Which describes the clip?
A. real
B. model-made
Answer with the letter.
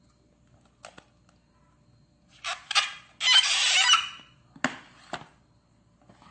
A